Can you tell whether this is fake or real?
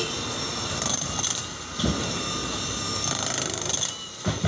real